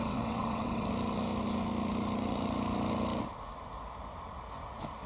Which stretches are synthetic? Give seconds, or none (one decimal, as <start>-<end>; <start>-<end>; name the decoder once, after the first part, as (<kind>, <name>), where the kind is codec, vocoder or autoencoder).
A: 0.0-0.9 (vocoder, WaveNeXt)